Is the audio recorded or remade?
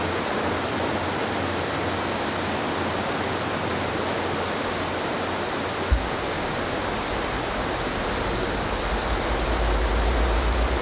recorded